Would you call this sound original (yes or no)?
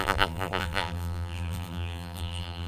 no